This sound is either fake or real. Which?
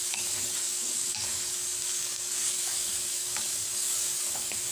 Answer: fake